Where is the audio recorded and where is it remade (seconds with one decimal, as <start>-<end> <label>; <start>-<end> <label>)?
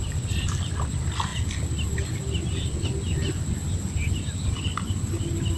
0.0-5.6 recorded